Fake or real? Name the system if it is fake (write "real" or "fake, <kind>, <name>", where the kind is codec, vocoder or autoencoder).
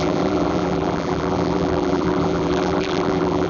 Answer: fake, vocoder, BigVGAN v2